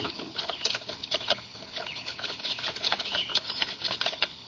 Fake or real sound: fake